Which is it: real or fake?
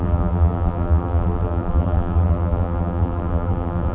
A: fake